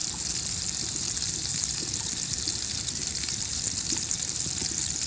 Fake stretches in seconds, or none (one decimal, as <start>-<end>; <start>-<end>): none